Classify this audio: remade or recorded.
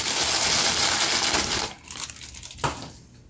recorded